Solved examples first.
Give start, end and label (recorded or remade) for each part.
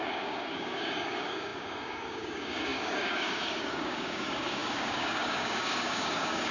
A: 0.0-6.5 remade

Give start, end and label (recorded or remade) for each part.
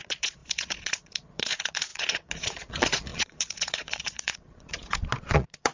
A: 0.0-5.7 remade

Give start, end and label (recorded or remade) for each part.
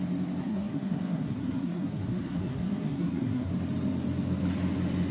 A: 0.0-0.4 recorded; 0.4-3.5 remade; 3.5-5.1 recorded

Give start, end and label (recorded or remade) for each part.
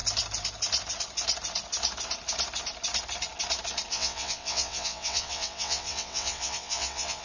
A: 0.0-3.9 recorded; 3.9-7.2 remade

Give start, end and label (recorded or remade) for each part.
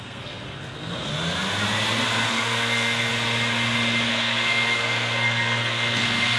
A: 0.0-1.1 remade; 1.1-2.3 recorded; 2.3-3.1 remade; 3.1-4.1 recorded; 4.1-6.4 remade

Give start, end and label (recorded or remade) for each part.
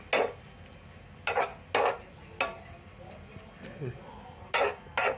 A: 0.0-5.2 recorded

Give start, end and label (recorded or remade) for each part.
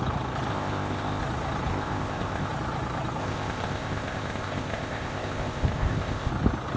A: 0.0-0.5 recorded; 0.5-1.2 remade; 1.2-1.7 recorded; 1.7-2.5 remade; 2.5-3.2 recorded; 3.2-6.3 remade; 6.3-6.8 recorded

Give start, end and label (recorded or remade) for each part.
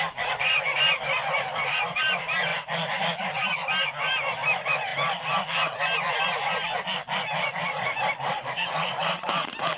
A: 0.0-2.5 remade; 2.5-3.2 recorded; 3.2-4.9 remade; 4.9-8.1 recorded; 8.1-9.8 remade